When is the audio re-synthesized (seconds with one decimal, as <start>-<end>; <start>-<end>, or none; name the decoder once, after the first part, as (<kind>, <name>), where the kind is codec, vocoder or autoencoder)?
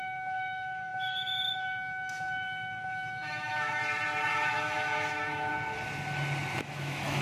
0.0-3.8 (autoencoder, DAC-VAE); 4.3-5.5; 6.6-7.2